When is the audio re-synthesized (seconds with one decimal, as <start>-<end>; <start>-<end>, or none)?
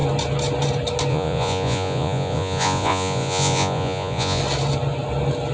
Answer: 1.1-4.4